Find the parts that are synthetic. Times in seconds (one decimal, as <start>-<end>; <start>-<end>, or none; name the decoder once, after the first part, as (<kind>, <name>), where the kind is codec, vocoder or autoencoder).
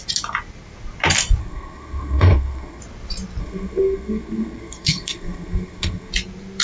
1.4-2.8 (codec, SNAC); 3.4-6.1